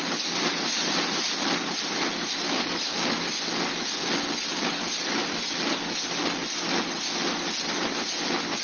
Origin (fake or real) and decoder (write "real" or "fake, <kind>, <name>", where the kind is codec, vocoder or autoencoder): real